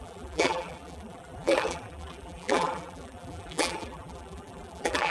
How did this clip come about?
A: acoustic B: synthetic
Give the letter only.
B